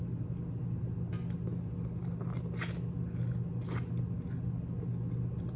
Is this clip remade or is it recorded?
recorded